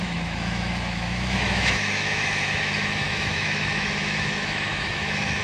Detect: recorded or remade remade